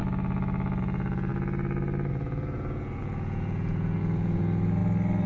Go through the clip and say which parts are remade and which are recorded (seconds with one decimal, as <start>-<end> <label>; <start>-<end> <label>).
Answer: 0.0-0.8 recorded; 0.8-1.3 remade; 1.3-2.1 recorded; 2.1-4.8 remade; 4.8-5.3 recorded